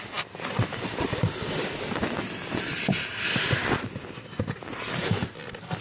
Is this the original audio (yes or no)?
yes